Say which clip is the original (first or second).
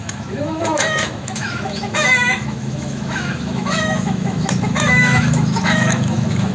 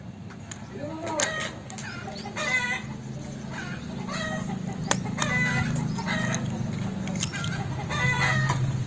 second